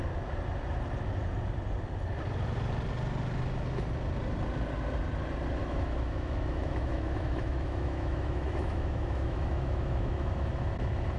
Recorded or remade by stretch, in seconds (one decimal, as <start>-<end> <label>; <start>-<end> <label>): 0.0-5.6 recorded; 5.6-10.5 remade; 10.5-11.2 recorded

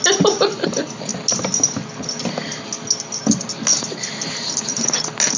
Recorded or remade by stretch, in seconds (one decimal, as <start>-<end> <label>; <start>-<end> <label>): 0.0-5.4 recorded

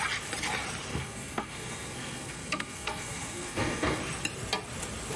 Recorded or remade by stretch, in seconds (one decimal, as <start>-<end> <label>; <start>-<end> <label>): 0.0-0.9 recorded; 0.9-4.0 remade; 4.0-5.2 recorded

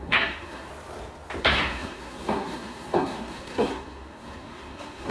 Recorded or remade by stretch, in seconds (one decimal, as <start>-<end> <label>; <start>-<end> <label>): 0.0-0.7 remade; 0.7-1.4 recorded; 1.4-5.1 remade

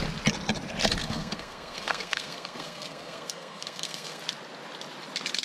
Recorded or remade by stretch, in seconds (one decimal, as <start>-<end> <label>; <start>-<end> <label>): 0.0-1.0 recorded; 1.0-4.2 remade; 4.2-5.4 recorded

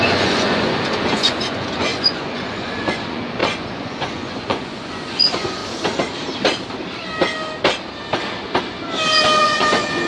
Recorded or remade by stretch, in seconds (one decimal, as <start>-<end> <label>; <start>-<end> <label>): 0.0-5.6 remade; 5.6-9.4 recorded; 9.4-10.1 remade